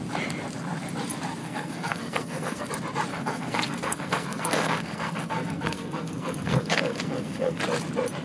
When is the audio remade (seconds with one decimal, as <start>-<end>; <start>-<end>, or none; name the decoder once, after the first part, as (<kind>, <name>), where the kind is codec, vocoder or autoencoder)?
1.4-2.7 (codec, SNAC); 3.1-7.6